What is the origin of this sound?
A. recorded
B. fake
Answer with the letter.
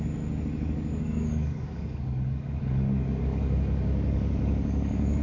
B